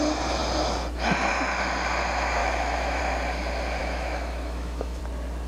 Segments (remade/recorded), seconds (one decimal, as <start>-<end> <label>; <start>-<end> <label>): 0.0-2.4 recorded; 2.4-3.0 remade; 3.0-3.8 recorded; 3.8-5.0 remade; 5.0-5.5 recorded